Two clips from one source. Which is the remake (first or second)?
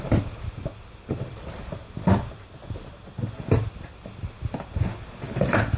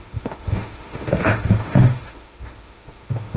second